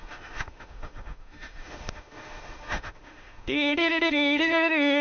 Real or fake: fake